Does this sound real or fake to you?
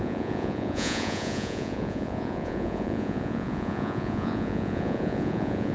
fake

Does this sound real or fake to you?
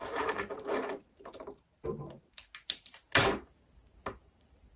fake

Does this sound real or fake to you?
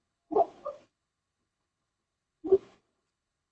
fake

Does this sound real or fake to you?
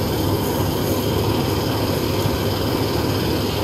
real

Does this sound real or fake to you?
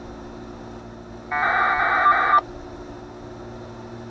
real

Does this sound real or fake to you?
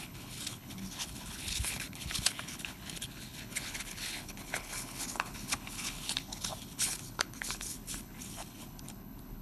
fake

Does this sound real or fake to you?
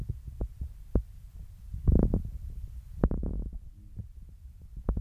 real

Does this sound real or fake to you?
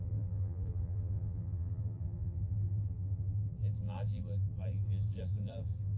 fake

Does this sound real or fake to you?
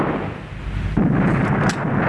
real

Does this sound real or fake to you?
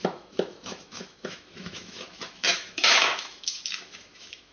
fake